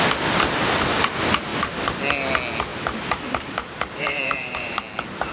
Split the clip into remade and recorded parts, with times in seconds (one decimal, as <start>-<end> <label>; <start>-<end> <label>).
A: 0.0-1.5 recorded; 1.5-2.0 remade; 2.0-2.7 recorded; 2.7-4.8 remade; 4.8-5.3 recorded